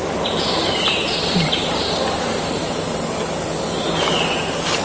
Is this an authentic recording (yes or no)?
yes